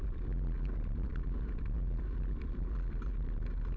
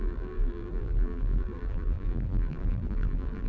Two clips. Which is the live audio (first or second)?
first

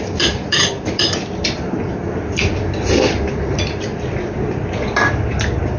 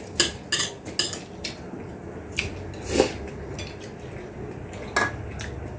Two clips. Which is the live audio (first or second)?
second